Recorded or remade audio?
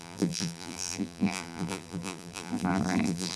remade